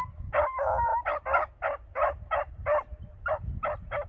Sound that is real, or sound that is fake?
real